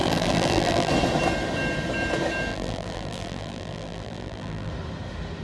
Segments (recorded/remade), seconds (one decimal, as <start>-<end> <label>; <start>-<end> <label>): 0.0-0.9 remade; 0.9-2.5 recorded; 2.5-4.7 remade; 4.7-5.4 recorded